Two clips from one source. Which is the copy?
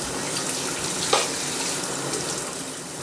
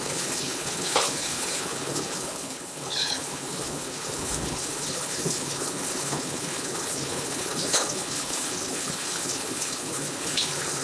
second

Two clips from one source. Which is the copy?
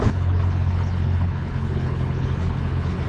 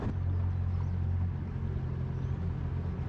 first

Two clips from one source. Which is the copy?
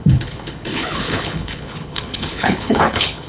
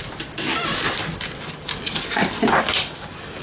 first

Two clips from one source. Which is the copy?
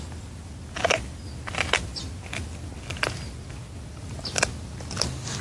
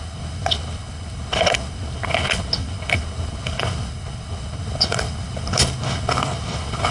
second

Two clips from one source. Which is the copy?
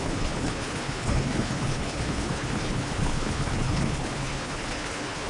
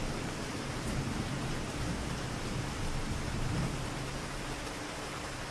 first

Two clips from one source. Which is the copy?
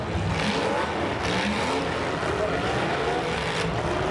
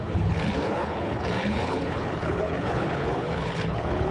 second